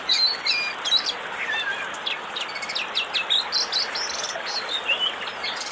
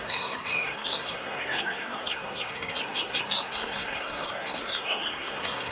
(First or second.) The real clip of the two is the first